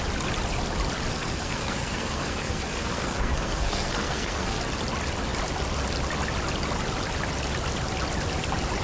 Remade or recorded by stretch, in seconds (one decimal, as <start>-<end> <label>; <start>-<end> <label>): 0.0-1.1 recorded; 1.1-4.6 remade; 4.6-8.8 recorded